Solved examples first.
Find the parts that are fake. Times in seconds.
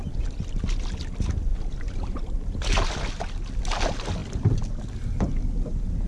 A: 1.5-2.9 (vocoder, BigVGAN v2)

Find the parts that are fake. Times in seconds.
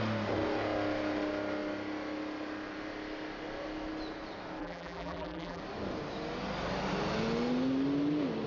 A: 4.6-5.6 (vocoder, BigVGAN v2)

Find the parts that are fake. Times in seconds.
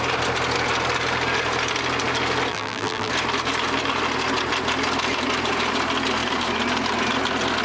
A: 2.5-3.1 (vocoder, BigVGAN v2)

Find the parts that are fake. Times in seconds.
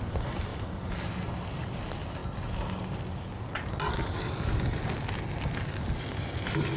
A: none